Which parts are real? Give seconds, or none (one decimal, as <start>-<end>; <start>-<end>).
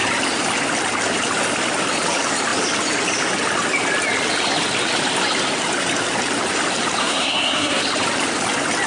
0.0-7.0; 7.8-8.9